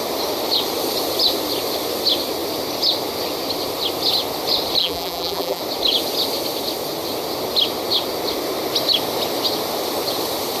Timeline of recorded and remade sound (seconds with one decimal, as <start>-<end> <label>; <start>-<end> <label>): 0.0-4.8 recorded; 4.8-5.6 remade; 5.6-10.6 recorded